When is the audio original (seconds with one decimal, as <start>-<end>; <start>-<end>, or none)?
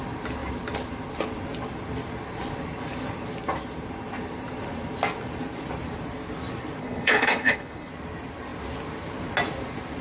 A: 0.0-6.8; 7.9-10.0